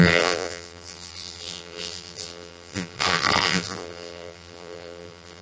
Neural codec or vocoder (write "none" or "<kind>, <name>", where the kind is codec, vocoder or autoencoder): vocoder, BigVGAN v2